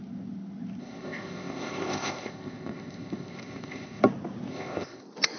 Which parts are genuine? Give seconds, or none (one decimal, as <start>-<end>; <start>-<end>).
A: 0.0-0.8; 4.0-4.5; 5.0-5.4